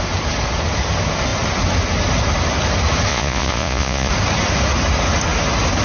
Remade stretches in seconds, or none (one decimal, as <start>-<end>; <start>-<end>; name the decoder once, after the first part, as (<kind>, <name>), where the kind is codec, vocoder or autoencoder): 3.1-4.1 (vocoder, Vocos)